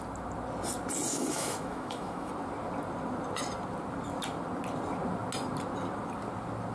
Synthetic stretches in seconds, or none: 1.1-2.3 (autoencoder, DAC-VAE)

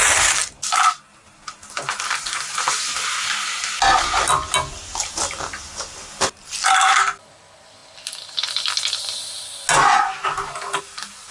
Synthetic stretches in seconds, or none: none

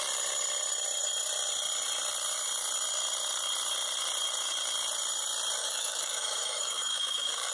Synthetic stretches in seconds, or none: 5.6-7.5 (autoencoder, DAC-VAE)

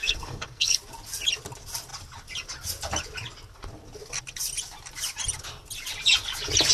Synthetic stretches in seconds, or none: 0.0-0.8 (codec, SNAC)

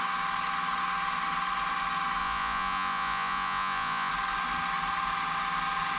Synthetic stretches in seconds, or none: 2.2-4.1 (vocoder, Vocos)

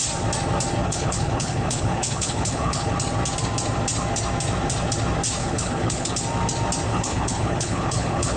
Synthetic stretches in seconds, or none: 0.8-2.9 (codec, HILCodec); 5.4-6.1; 6.9-8.4

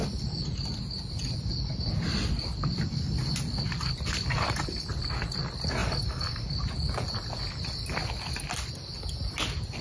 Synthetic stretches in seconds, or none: none